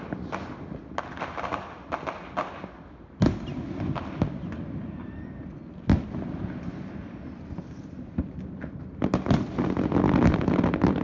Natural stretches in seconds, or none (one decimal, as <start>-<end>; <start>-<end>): 0.0-11.0